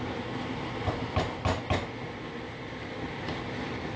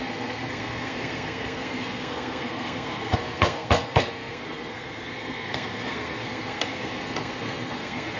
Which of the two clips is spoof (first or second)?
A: second